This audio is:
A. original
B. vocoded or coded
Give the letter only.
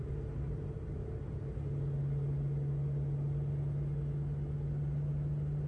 A